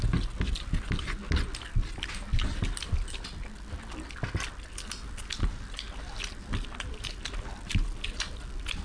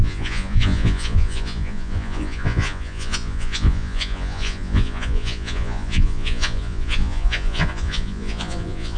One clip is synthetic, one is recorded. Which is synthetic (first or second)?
second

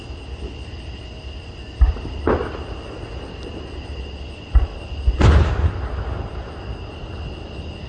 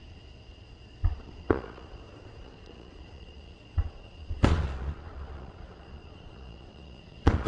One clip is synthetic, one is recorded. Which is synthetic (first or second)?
second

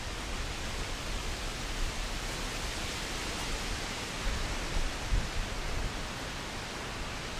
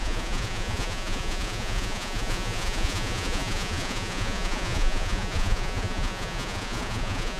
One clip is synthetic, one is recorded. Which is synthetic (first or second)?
second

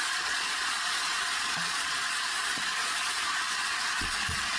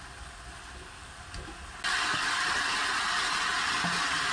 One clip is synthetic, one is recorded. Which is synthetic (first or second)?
first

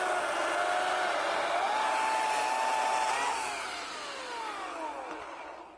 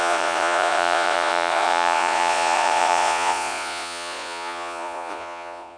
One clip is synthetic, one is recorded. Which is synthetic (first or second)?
second